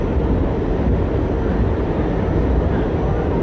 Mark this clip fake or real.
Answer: real